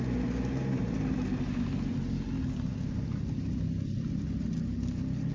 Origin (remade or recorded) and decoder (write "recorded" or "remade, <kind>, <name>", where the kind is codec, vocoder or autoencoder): recorded